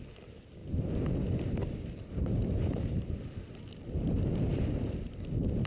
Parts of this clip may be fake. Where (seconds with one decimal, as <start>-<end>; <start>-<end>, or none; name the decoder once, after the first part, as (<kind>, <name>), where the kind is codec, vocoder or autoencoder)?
none